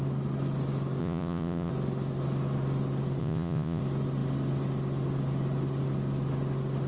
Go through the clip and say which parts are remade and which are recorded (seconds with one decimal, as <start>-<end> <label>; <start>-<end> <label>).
0.0-1.0 recorded; 1.0-1.7 remade; 1.7-3.2 recorded; 3.2-3.8 remade; 3.8-6.9 recorded